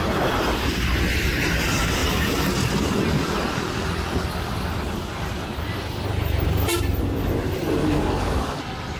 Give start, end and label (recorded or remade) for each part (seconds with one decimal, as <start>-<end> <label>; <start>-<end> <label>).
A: 0.0-7.8 recorded; 7.8-8.6 remade; 8.6-9.0 recorded